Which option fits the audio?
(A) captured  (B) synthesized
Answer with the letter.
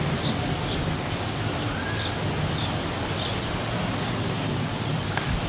A